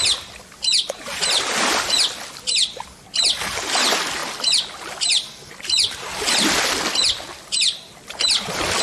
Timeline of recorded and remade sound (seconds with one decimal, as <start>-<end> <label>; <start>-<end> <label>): 0.0-4.2 recorded; 4.2-8.8 remade